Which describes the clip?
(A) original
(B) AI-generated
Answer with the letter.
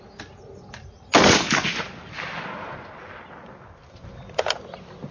A